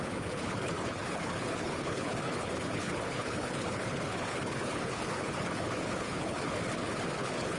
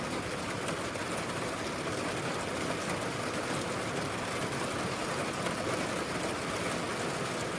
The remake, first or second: first